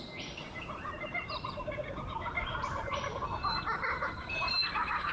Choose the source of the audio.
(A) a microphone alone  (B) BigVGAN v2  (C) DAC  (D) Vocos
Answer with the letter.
A